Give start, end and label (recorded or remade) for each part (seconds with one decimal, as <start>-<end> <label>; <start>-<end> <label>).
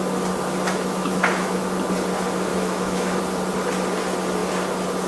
0.0-0.7 recorded; 0.7-1.6 remade; 1.6-2.5 recorded; 2.5-3.2 remade; 3.2-5.1 recorded